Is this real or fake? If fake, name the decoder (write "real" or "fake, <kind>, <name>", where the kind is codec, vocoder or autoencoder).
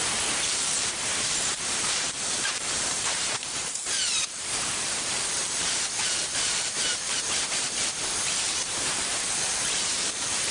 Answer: fake, vocoder, BigVGAN v2